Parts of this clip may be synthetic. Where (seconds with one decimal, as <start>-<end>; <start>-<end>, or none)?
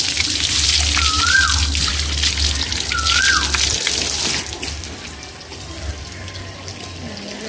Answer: none